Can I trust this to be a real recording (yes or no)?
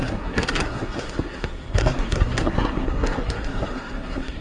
no